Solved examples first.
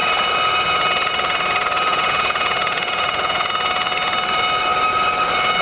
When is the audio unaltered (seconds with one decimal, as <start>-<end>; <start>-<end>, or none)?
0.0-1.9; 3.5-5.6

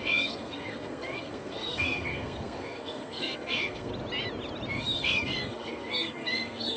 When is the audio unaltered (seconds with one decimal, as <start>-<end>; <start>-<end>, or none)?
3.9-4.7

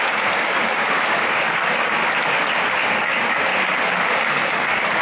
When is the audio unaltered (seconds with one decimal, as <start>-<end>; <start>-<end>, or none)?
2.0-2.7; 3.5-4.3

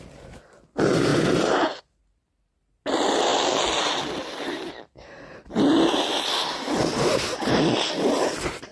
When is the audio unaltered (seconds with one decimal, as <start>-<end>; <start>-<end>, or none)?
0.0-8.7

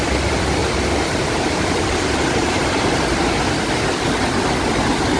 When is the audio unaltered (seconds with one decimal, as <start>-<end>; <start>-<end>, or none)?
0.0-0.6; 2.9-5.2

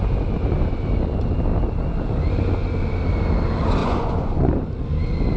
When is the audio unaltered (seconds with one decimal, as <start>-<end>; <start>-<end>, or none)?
0.0-3.8; 4.5-5.4

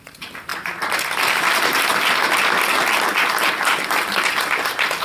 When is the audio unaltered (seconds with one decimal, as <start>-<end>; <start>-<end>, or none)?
0.0-5.0